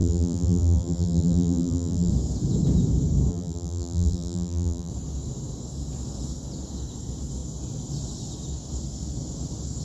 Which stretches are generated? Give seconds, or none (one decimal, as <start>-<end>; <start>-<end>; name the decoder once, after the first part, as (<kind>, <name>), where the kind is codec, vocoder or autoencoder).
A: 0.0-2.1 (vocoder, BigVGAN v2); 3.3-4.9